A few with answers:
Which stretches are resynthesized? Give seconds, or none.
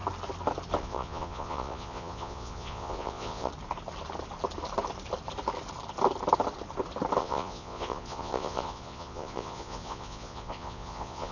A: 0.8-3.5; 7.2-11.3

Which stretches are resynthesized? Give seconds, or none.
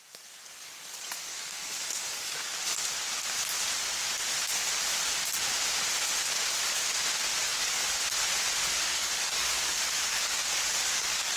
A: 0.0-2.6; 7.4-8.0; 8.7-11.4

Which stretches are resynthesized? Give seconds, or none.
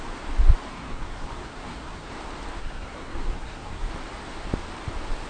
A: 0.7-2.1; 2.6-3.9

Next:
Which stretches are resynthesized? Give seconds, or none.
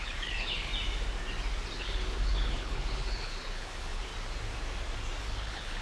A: 0.0-0.7; 1.8-4.1; 5.2-5.8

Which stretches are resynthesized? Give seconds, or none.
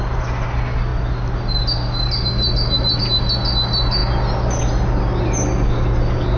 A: none